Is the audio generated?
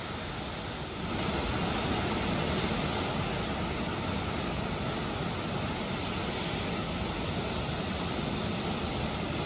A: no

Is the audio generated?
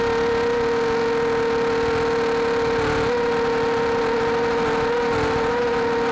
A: no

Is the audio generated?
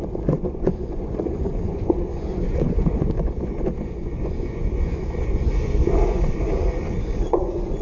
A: yes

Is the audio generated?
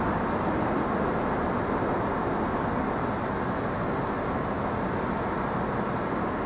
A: no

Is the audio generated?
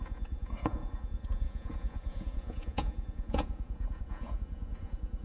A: yes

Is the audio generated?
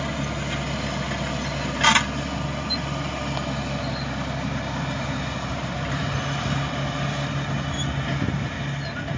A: no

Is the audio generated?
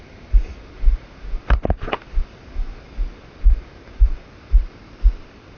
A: no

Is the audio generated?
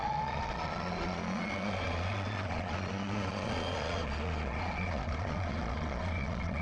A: yes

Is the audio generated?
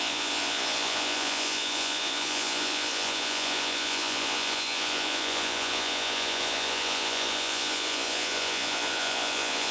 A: yes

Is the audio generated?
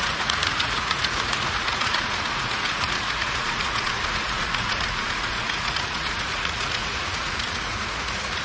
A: yes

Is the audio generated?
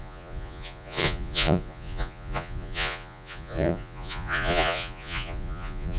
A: yes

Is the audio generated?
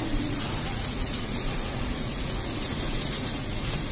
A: yes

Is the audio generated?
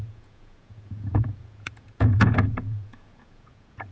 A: yes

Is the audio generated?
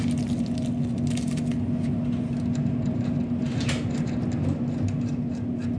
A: no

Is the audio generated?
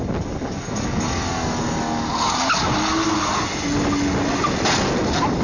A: no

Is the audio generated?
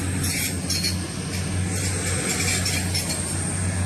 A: no